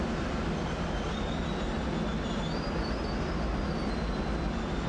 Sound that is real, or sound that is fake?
real